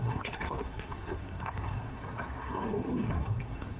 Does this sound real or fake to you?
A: fake